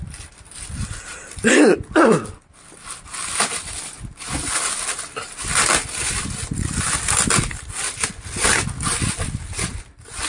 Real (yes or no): yes